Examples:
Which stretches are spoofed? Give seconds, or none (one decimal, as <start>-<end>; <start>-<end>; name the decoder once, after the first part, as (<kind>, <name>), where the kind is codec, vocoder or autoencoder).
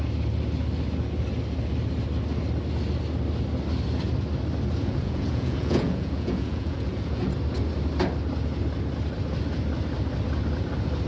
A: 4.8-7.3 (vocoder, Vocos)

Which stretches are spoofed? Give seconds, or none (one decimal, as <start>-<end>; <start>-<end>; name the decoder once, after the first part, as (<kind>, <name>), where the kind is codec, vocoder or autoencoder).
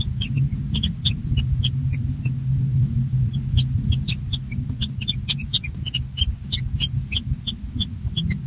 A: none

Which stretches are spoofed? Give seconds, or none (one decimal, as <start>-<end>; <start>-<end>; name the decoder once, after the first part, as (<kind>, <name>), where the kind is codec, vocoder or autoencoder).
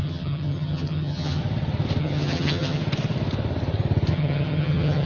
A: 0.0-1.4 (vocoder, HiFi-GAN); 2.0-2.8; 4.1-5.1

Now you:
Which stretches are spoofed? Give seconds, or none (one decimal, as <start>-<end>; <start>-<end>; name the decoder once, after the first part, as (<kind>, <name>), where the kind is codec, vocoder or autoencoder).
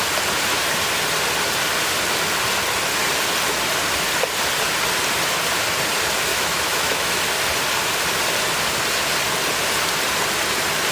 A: 6.3-7.2 (autoencoder, DAC-VAE)